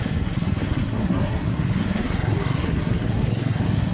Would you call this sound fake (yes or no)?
yes